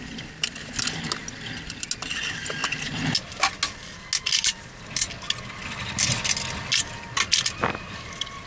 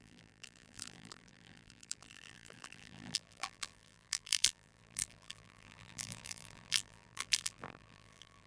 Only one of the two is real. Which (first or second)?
first